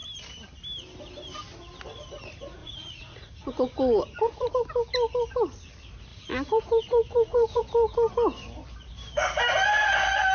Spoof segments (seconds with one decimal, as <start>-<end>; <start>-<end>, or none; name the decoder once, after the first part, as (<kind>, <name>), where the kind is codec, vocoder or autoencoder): 2.6-4.5 (vocoder, Vocos); 6.1-7.6